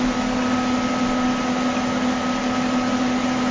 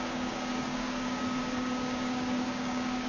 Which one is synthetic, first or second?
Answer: second